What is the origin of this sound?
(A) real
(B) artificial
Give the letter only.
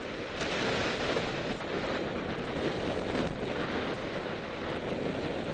A